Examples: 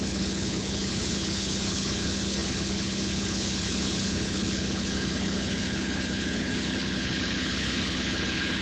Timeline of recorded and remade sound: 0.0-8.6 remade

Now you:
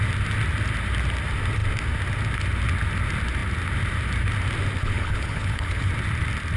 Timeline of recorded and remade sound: 0.0-4.8 recorded; 4.8-5.9 remade; 5.9-6.6 recorded

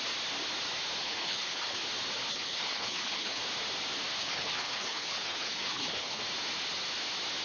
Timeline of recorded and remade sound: 0.0-1.0 recorded; 1.0-1.8 remade; 1.8-2.3 recorded; 2.3-3.4 remade; 3.4-4.2 recorded; 4.2-6.2 remade; 6.2-7.4 recorded

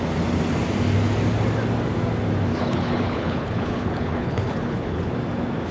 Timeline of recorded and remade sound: 0.0-2.5 recorded; 2.5-5.1 remade; 5.1-5.7 recorded

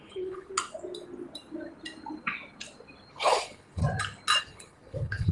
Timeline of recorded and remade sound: 0.0-0.5 remade; 0.5-3.1 recorded; 3.1-3.8 remade; 3.8-4.4 recorded; 4.4-5.3 remade

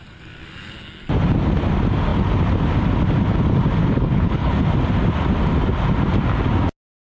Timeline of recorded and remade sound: 0.0-3.8 recorded; 3.8-4.5 remade; 4.5-7.0 recorded